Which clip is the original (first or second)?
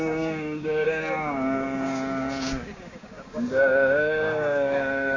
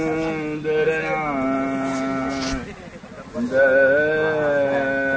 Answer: second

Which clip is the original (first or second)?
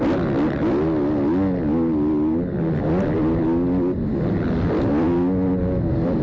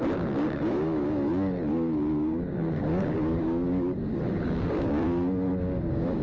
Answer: first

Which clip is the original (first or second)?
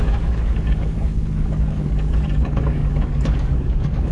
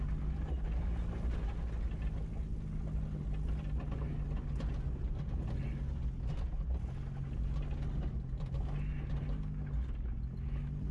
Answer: second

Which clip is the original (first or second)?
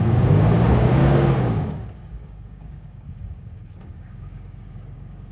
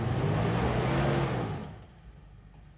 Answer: second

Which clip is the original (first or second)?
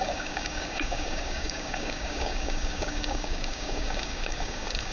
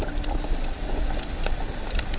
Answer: second